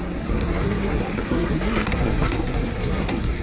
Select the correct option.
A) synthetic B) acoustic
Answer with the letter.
A